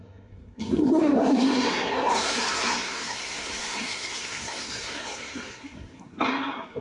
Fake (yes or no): yes